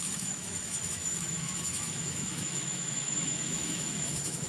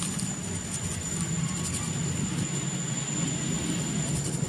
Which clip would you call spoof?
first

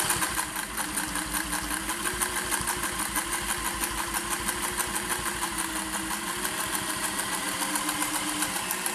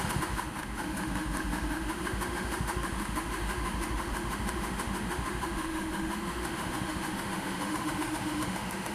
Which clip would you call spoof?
second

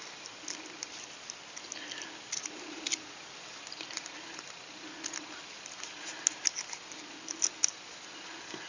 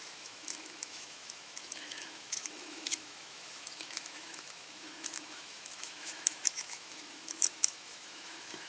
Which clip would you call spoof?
second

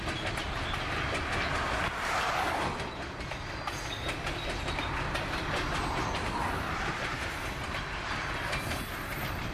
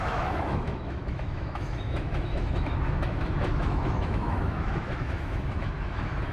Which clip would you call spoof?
second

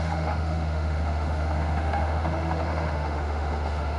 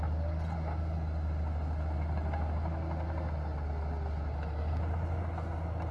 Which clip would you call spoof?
first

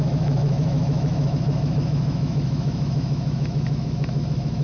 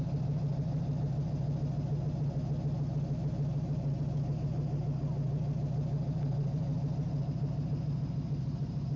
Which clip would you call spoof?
first